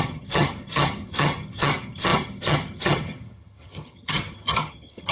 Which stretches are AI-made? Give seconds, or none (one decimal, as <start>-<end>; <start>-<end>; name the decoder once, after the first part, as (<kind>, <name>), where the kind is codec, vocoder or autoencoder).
0.0-5.1 (vocoder, HiFi-GAN)